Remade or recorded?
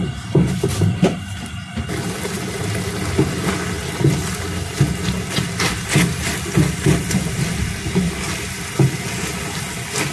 recorded